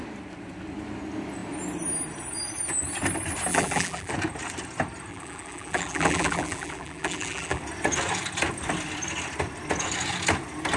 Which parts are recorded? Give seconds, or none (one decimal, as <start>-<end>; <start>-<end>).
0.0-3.5; 4.1-5.1; 7.6-10.8

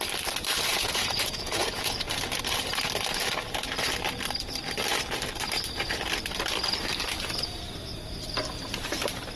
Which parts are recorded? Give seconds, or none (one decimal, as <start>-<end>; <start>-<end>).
0.0-0.7; 2.1-9.4

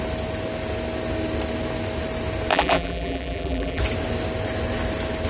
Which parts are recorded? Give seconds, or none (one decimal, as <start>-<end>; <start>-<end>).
0.0-2.5; 3.8-5.3

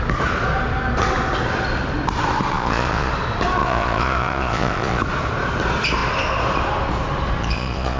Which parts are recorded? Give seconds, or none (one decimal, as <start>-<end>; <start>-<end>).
0.0-2.5; 3.1-3.6; 5.0-7.4

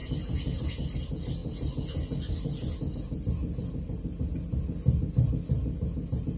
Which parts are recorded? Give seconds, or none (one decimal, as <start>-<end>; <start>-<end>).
0.6-6.4

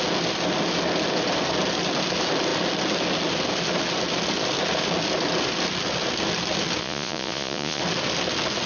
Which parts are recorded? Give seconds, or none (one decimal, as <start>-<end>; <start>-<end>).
0.0-6.8; 7.8-8.7

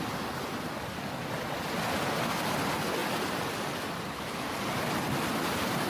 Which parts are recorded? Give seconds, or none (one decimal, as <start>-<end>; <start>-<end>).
0.0-5.9